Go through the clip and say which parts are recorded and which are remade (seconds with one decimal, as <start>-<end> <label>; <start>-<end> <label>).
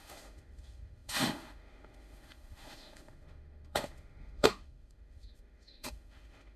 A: 0.0-6.6 remade